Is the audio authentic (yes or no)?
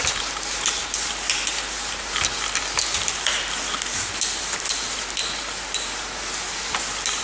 yes